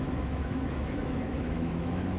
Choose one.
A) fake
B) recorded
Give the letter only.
A